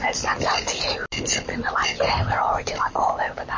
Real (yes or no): yes